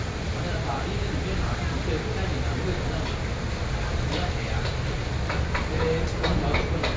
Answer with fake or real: real